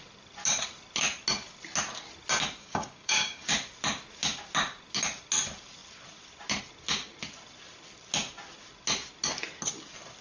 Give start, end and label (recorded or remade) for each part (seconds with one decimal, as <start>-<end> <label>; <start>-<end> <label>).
0.0-2.6 recorded; 2.6-3.5 remade; 3.5-10.2 recorded

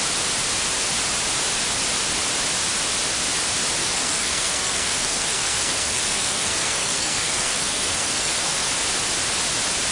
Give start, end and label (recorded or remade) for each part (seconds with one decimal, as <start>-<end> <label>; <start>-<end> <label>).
0.0-3.8 recorded; 3.8-8.7 remade; 8.7-9.9 recorded

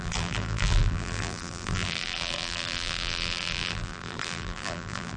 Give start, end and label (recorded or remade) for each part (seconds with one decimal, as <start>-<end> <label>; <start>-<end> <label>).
0.0-5.2 remade

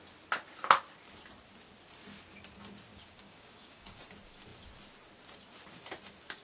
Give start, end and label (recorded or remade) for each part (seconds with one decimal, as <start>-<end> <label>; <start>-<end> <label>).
0.0-2.9 recorded; 2.9-4.0 remade; 4.0-6.4 recorded

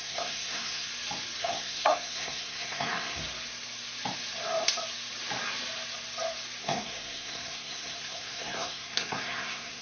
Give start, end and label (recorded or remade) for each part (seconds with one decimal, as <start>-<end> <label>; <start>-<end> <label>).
0.0-0.9 remade; 0.9-1.4 recorded; 1.4-3.2 remade; 3.2-6.6 recorded; 6.6-9.8 remade

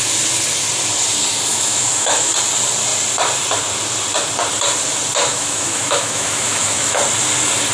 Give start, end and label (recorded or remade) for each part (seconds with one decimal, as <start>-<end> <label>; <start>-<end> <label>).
0.0-1.5 recorded; 1.5-2.3 remade; 2.3-5.3 recorded; 5.3-7.0 remade; 7.0-7.7 recorded